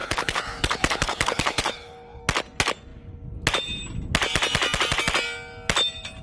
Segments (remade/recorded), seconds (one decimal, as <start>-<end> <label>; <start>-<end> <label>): 0.0-2.2 remade; 2.2-6.2 recorded